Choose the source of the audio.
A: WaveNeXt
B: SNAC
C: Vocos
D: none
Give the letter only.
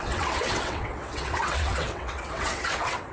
A